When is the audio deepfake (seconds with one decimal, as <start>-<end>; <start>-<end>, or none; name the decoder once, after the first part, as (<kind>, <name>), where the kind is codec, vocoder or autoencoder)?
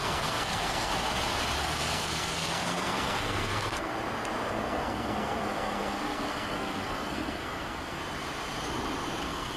0.0-0.9 (codec, SNAC); 1.6-3.9; 4.5-8.0; 9.2-9.6